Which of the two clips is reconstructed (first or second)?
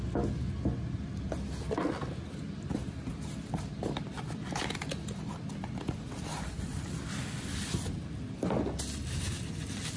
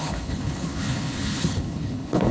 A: second